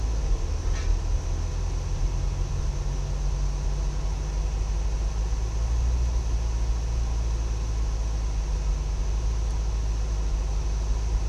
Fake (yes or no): no